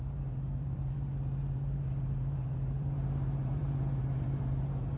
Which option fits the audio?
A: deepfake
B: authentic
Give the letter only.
A